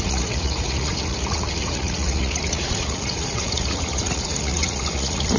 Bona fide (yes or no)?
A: no